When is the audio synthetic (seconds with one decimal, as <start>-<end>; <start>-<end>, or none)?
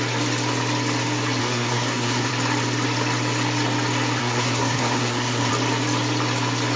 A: 1.4-2.3; 4.2-5.5